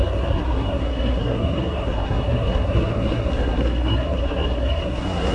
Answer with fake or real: fake